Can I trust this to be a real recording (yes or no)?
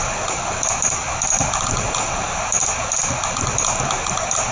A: yes